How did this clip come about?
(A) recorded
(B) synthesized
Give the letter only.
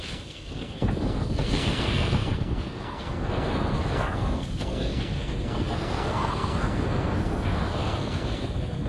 B